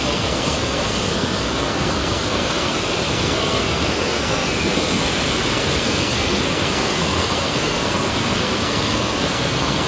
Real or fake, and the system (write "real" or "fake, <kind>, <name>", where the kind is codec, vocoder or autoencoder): fake, codec, SNAC